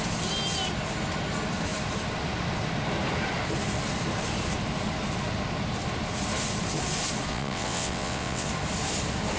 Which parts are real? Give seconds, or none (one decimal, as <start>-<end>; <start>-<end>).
0.0-7.3; 8.5-9.4